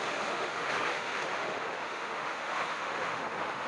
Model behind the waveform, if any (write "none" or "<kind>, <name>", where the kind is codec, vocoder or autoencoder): autoencoder, DAC-VAE